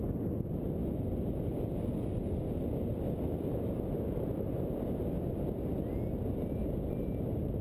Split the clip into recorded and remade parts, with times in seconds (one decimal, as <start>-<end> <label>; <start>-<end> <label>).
0.0-7.6 recorded